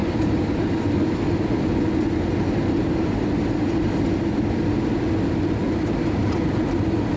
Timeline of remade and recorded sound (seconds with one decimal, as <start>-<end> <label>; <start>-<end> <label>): 0.0-7.2 recorded